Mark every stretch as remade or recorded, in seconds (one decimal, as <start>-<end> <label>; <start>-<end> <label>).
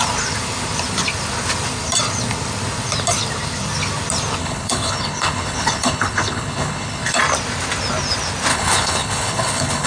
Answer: 0.0-4.4 recorded; 4.4-7.2 remade; 7.2-8.5 recorded; 8.5-9.9 remade